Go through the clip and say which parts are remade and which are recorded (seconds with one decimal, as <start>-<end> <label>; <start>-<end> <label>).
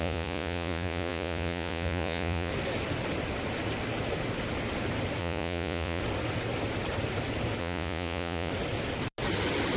0.0-2.5 remade; 2.5-5.2 recorded; 5.2-6.0 remade; 6.0-7.6 recorded; 7.6-8.5 remade; 8.5-9.8 recorded